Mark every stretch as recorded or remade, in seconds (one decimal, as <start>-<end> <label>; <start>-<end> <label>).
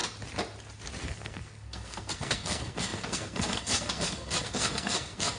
0.0-1.0 recorded; 1.0-5.4 remade